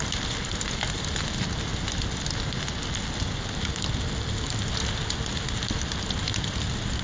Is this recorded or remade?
recorded